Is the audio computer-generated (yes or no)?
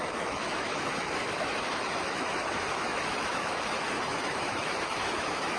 yes